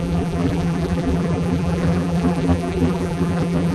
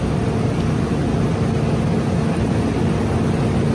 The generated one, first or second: first